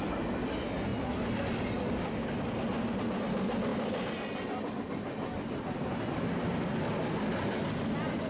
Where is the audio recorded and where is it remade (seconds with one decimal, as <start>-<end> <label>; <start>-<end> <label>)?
0.0-8.3 recorded